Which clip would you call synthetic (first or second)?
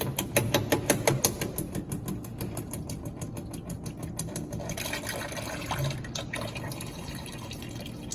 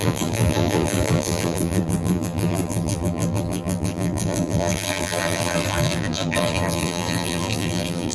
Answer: second